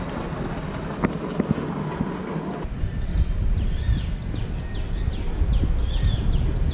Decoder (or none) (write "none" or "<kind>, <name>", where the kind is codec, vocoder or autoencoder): none